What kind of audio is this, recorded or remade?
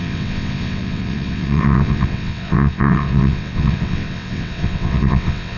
remade